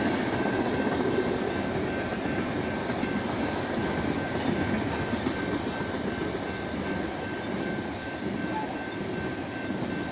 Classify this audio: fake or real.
real